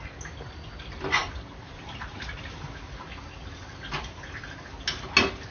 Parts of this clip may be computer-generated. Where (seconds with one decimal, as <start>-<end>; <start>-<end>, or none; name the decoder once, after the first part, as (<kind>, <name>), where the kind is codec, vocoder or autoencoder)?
1.2-2.3 (vocoder, BigVGAN v2)